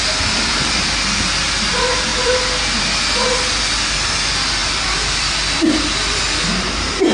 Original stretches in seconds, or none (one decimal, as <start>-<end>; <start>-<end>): 1.2-2.1; 2.8-4.6; 5.8-7.1